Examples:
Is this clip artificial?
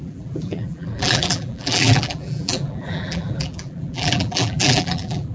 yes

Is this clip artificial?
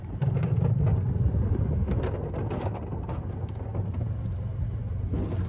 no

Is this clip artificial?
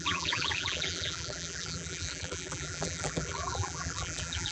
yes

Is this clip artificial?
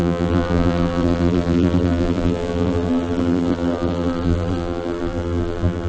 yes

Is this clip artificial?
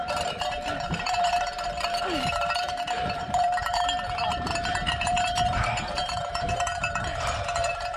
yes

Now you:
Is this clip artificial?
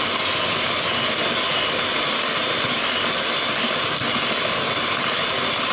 no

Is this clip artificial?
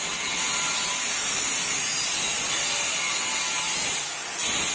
no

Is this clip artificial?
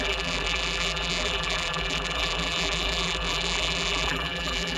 yes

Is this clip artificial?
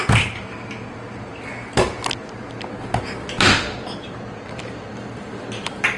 no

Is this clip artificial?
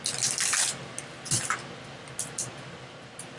no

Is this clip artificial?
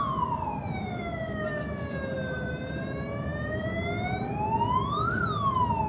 no